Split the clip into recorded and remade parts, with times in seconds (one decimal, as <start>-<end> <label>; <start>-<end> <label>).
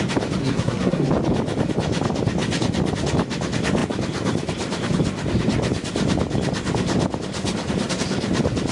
0.0-0.4 recorded; 0.4-1.1 remade; 1.1-8.7 recorded